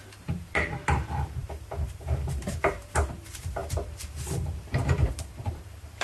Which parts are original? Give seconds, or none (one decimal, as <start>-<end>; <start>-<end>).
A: none